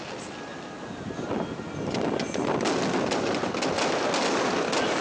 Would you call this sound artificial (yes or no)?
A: no